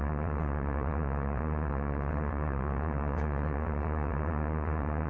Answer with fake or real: fake